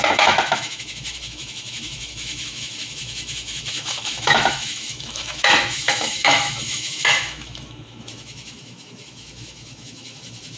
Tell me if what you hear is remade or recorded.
remade